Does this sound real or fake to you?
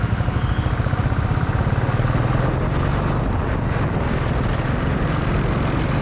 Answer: real